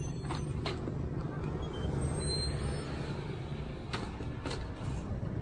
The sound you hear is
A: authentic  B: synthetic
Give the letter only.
A